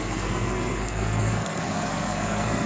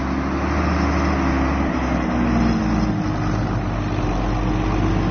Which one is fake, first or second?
first